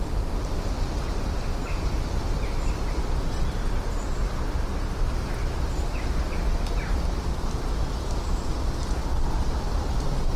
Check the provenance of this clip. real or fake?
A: real